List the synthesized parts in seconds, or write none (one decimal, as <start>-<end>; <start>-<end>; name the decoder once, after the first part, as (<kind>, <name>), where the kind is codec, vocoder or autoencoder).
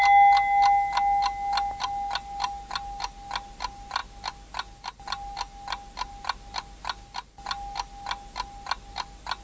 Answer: none